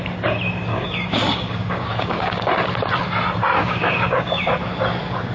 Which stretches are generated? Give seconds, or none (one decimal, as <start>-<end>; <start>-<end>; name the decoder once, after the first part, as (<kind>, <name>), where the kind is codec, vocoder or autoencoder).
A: 0.7-2.5 (codec, DAC); 3.6-4.5